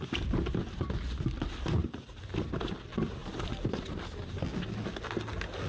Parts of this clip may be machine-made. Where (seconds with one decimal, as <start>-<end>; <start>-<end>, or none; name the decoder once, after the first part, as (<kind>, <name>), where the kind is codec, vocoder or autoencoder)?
1.8-2.3 (vocoder, Vocos)